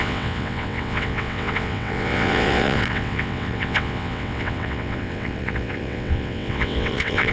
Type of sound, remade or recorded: remade